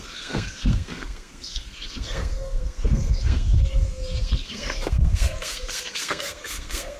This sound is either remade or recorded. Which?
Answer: remade